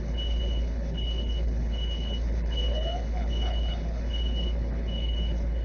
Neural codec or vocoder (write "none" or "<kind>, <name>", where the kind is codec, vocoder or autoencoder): codec, HILCodec